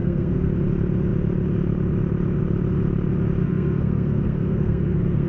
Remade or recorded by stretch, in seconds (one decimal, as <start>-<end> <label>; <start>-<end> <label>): 0.0-0.5 remade; 0.5-3.4 recorded; 3.4-5.3 remade